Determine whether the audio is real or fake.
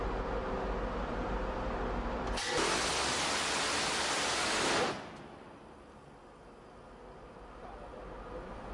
real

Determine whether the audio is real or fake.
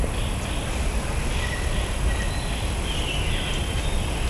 real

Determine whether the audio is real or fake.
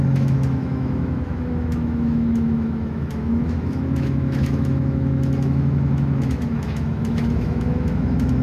fake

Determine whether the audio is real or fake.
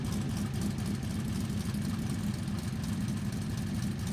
real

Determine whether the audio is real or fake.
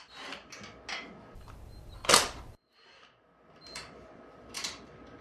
real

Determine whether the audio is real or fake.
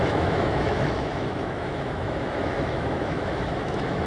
fake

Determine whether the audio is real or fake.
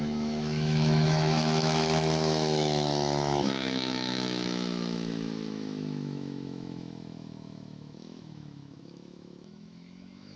fake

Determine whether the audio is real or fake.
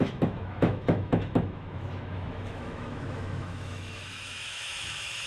fake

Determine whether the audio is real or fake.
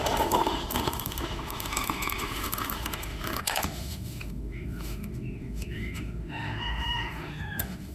fake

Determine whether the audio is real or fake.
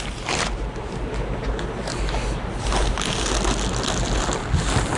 real